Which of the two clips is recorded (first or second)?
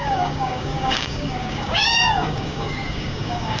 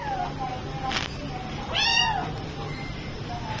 second